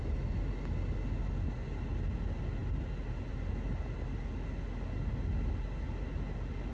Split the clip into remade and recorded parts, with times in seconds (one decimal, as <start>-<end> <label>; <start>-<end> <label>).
0.0-6.7 recorded